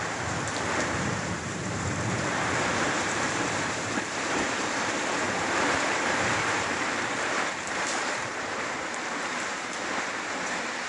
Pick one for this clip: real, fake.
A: fake